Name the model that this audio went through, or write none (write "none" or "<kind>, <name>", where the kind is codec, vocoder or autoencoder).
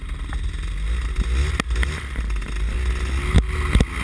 none